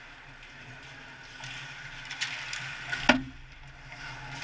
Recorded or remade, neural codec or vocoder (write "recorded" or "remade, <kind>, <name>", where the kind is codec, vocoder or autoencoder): recorded